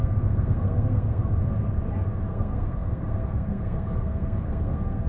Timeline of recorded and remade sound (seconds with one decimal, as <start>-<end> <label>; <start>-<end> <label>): 0.0-1.2 remade; 1.2-2.3 recorded; 2.3-5.1 remade